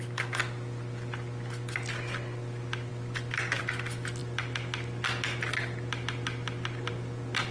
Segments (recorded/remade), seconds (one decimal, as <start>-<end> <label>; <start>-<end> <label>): 0.0-7.5 recorded